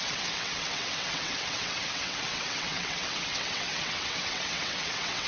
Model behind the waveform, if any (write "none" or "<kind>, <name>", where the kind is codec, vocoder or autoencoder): vocoder, WaveNeXt